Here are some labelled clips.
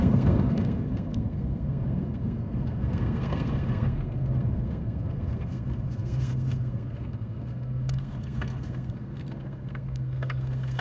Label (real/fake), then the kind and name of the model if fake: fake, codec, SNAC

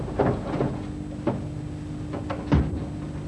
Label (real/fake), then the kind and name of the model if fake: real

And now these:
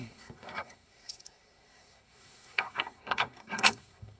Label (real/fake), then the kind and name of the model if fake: fake, codec, SNAC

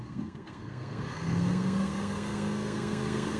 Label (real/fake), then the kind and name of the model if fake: fake, codec, SNAC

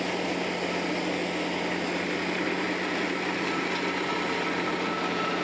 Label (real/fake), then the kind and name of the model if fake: real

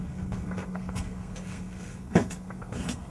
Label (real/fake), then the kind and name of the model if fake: fake, codec, SNAC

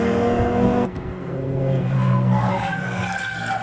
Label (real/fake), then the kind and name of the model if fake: fake, codec, SNAC